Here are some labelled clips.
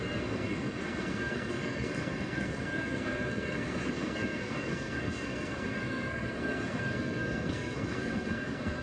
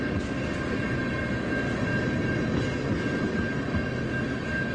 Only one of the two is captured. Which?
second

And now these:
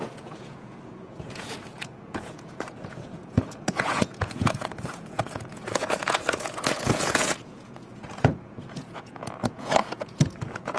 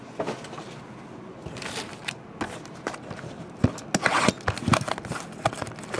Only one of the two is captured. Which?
second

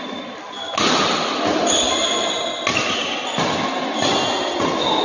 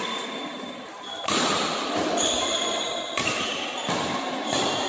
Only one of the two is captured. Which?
first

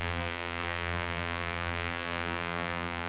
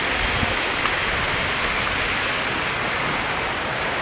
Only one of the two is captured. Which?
second